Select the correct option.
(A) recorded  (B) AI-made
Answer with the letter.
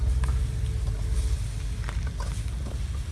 A